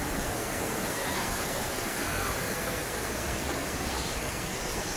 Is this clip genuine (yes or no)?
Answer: no